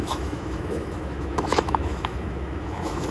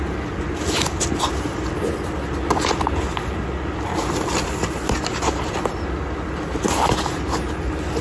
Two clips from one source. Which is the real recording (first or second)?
second